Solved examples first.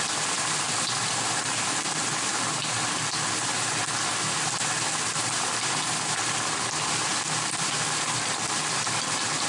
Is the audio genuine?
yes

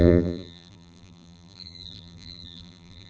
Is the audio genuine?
no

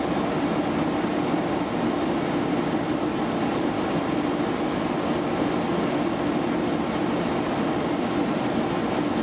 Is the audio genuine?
yes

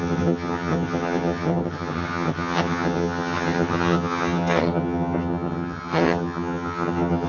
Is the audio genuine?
no